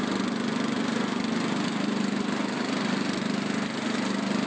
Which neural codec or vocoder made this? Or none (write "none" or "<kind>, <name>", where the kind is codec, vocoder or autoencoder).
none